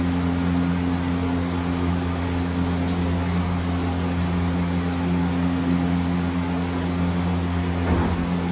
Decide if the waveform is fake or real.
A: real